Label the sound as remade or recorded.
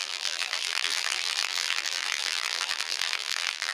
remade